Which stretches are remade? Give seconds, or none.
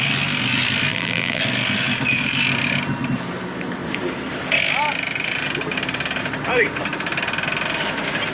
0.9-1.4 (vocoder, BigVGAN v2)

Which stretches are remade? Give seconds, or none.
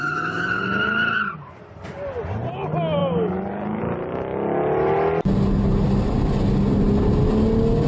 none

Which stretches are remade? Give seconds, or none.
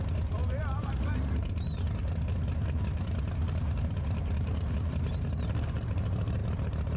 0.0-6.4 (vocoder, BigVGAN v2)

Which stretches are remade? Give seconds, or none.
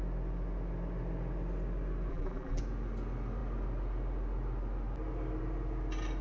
2.1-2.6 (vocoder, BigVGAN v2)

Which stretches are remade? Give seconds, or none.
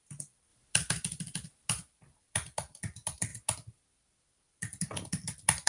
0.0-0.5 (vocoder, BigVGAN v2); 1.7-3.3; 4.3-5.7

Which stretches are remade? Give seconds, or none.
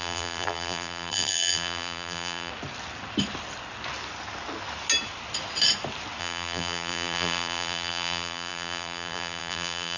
0.0-2.5 (vocoder, BigVGAN v2); 6.2-10.0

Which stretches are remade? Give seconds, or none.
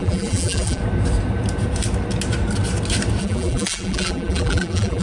0.0-0.8 (vocoder, BigVGAN v2); 3.2-5.0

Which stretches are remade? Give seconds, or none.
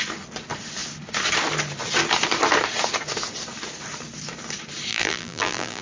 4.9-5.8 (vocoder, BigVGAN v2)